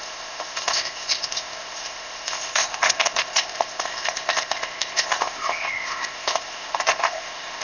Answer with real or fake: fake